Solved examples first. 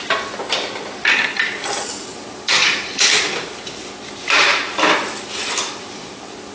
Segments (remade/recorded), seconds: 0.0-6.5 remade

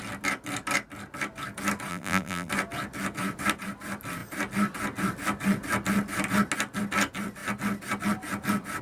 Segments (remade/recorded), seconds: 0.0-1.9 recorded; 1.9-2.5 remade; 2.5-8.8 recorded

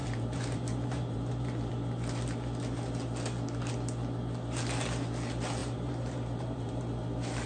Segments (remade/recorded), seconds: 0.0-1.7 remade; 1.7-5.6 recorded; 5.6-6.8 remade; 6.8-7.5 recorded